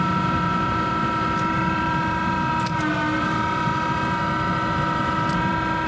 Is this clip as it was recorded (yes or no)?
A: no